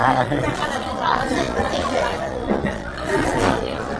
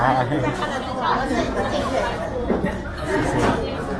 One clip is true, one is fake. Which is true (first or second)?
second